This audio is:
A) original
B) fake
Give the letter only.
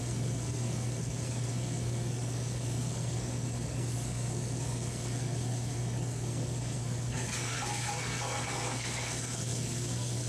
B